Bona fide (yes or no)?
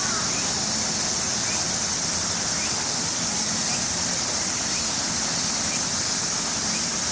yes